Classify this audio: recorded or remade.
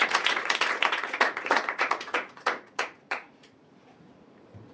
remade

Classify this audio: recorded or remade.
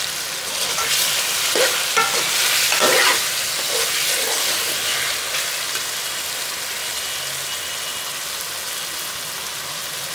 recorded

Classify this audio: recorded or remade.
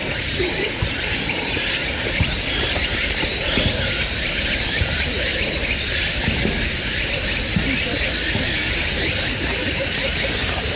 remade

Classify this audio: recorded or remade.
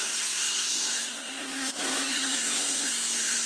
remade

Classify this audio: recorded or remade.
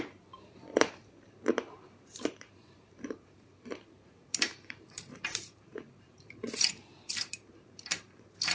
remade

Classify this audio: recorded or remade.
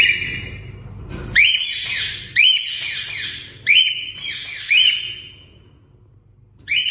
recorded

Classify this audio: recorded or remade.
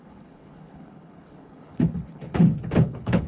remade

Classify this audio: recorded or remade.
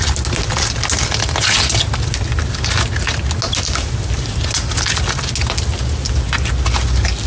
recorded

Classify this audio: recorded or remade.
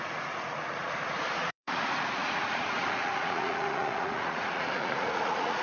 remade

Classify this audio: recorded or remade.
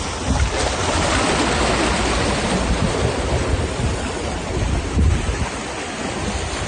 recorded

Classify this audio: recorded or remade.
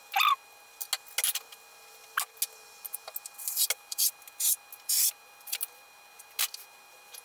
recorded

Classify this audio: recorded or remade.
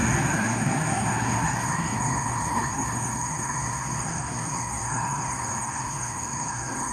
remade